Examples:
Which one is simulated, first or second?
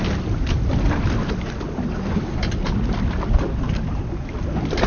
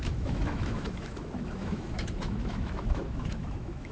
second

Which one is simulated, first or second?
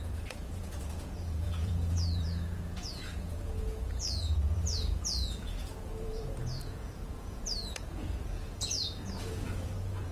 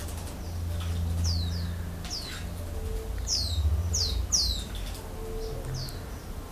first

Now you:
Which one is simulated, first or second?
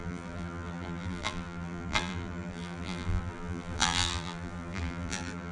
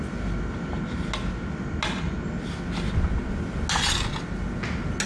first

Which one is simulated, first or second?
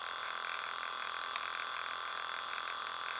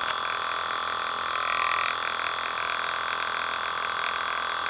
first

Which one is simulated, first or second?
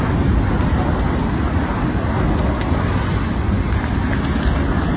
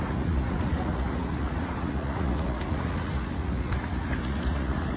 second